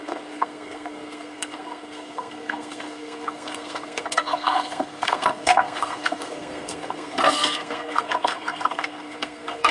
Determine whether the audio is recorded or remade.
remade